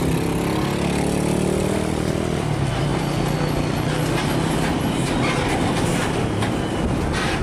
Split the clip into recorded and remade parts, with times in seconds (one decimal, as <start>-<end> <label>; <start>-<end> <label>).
0.0-7.4 recorded